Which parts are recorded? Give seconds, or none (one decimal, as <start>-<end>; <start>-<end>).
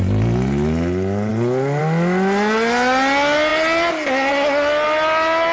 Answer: 0.0-5.5